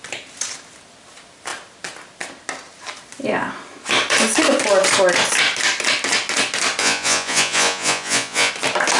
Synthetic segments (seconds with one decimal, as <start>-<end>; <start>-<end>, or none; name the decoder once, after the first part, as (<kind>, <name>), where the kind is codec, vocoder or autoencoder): 6.8-8.5 (vocoder, Vocos)